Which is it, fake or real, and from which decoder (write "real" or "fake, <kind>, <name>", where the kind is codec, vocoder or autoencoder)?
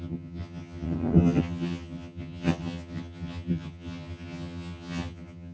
fake, vocoder, HiFi-GAN